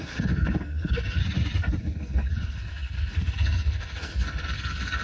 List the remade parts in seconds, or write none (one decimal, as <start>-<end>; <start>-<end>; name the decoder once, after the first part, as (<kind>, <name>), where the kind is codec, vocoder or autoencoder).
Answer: 0.0-1.2 (codec, SNAC); 1.8-5.0